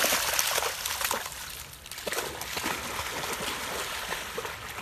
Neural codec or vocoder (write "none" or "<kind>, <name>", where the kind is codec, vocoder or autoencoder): none